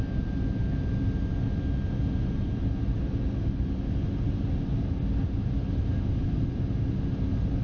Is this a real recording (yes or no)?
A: yes